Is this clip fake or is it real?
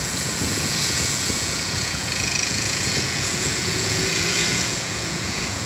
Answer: fake